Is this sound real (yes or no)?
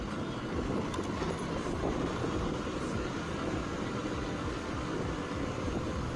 yes